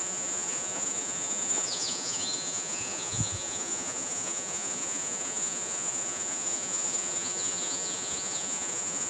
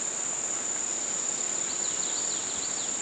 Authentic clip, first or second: second